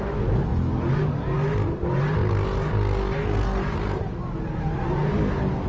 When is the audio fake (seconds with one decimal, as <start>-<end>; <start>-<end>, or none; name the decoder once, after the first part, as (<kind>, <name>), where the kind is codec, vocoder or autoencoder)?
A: none